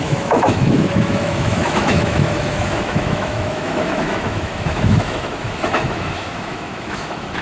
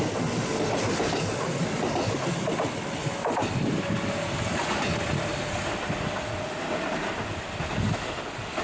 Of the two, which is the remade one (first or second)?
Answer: first